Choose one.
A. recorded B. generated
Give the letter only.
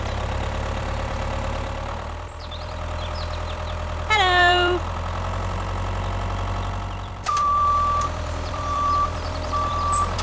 B